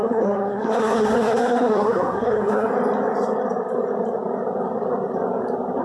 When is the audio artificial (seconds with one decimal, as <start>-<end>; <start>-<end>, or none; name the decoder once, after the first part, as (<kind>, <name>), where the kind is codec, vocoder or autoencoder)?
0.0-2.7 (codec, SNAC)